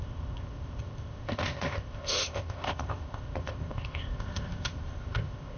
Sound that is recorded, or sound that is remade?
remade